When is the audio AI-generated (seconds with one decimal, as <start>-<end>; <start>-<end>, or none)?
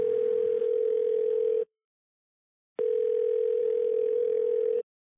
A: 0.6-2.0; 3.6-4.8